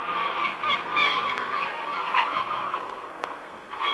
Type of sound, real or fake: fake